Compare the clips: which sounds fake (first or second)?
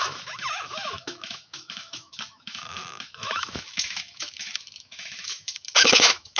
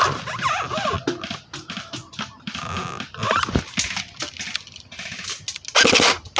first